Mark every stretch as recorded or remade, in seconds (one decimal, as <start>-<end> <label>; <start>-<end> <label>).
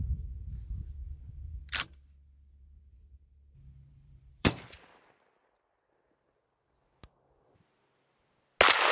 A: 0.0-1.0 recorded; 1.0-2.7 remade; 2.7-3.9 recorded; 3.9-4.7 remade; 4.7-8.9 recorded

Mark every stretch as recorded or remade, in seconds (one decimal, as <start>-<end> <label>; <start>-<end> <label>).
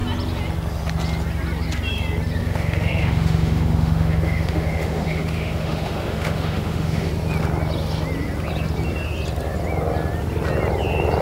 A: 0.0-2.4 recorded; 2.4-7.1 remade; 7.1-11.2 recorded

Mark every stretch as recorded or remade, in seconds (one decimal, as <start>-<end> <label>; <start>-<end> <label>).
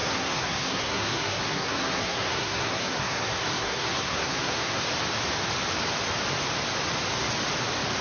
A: 0.0-4.8 remade; 4.8-8.0 recorded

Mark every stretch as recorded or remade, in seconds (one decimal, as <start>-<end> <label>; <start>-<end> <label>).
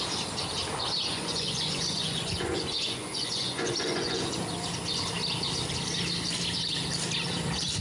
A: 0.0-1.1 recorded; 1.1-4.4 remade; 4.4-7.8 recorded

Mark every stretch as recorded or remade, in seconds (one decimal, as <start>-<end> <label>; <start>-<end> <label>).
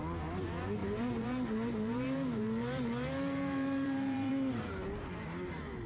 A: 0.0-0.8 recorded; 0.8-4.3 remade; 4.3-5.9 recorded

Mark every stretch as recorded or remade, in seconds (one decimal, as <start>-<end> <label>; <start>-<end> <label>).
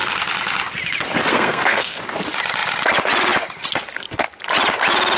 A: 0.0-1.3 recorded; 1.3-2.0 remade; 2.0-5.2 recorded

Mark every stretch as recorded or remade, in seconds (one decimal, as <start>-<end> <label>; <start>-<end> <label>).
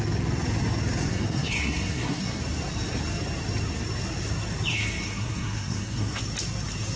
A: 0.0-1.1 recorded; 1.1-2.4 remade; 2.4-4.7 recorded; 4.7-6.2 remade; 6.2-7.0 recorded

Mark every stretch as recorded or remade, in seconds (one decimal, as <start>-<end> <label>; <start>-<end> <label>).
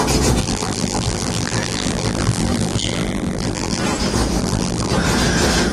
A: 0.0-0.4 recorded; 0.4-3.8 remade; 3.8-4.4 recorded; 4.4-4.9 remade; 4.9-5.7 recorded